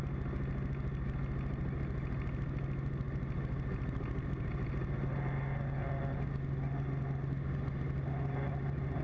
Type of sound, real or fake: real